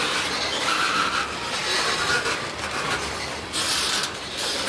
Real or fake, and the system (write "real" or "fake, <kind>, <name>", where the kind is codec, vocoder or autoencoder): real